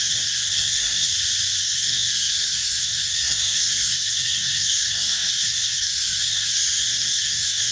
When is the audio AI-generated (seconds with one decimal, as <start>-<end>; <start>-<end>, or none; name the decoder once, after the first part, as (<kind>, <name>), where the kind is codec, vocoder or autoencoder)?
0.0-1.1 (codec, SNAC); 1.6-7.7